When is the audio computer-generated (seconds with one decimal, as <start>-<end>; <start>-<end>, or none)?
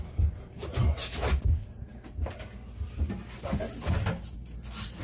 0.0-0.8; 1.3-1.9